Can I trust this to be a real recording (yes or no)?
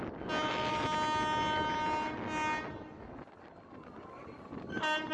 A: yes